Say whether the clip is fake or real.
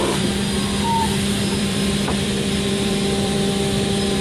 fake